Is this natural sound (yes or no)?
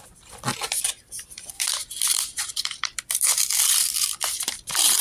no